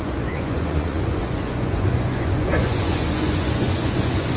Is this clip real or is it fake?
fake